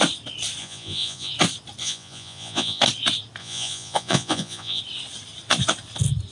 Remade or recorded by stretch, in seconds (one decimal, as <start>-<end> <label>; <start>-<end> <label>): 0.0-0.6 recorded; 0.6-1.3 remade; 1.3-1.8 recorded; 1.8-2.8 remade; 2.8-3.4 recorded; 3.4-4.8 remade; 4.8-6.3 recorded